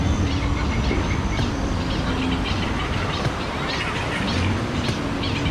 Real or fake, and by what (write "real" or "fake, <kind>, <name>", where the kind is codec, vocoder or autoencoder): real